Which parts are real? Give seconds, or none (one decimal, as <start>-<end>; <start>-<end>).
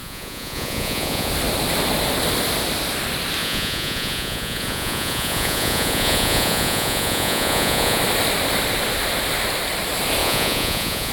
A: 1.3-3.4; 8.0-10.2